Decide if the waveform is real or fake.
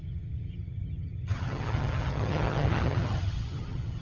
fake